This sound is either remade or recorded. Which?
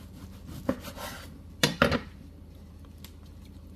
recorded